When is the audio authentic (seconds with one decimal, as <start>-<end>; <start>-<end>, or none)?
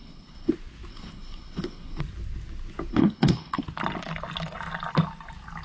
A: 0.5-0.9; 2.0-2.9; 3.6-5.6